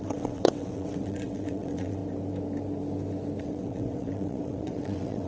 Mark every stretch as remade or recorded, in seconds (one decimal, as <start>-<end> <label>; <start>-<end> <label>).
0.0-2.0 remade; 2.0-3.4 recorded; 3.4-5.3 remade